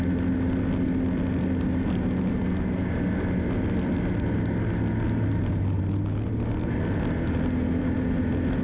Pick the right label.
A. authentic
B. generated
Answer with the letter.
A